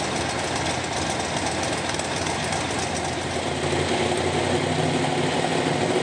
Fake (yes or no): no